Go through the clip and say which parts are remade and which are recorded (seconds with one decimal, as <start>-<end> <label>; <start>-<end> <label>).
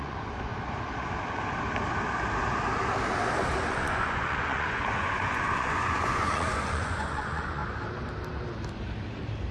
0.0-0.5 remade; 0.5-3.7 recorded; 3.7-7.6 remade; 7.6-9.5 recorded